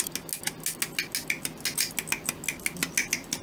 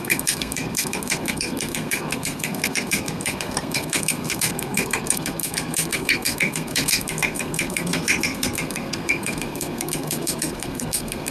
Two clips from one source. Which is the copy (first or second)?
second